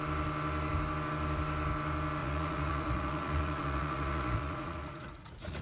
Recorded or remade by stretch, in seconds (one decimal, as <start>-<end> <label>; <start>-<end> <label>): 0.0-2.2 recorded; 2.2-5.6 remade